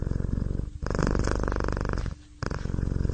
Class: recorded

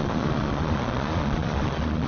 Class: remade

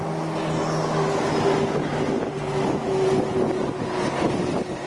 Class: recorded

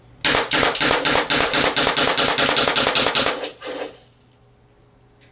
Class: recorded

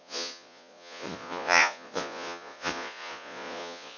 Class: remade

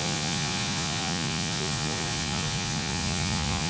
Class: remade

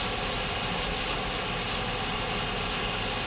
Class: recorded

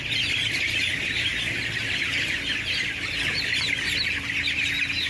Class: recorded